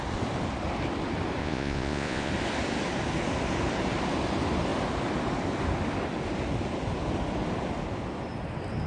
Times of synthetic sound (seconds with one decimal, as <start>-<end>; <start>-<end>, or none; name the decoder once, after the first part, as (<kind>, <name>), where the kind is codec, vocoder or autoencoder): 1.4-2.3 (vocoder, Vocos)